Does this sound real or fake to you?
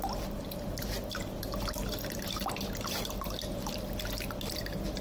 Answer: real